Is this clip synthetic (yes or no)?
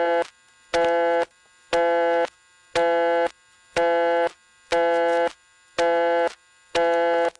no